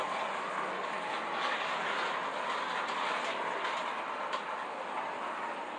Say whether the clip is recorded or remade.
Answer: recorded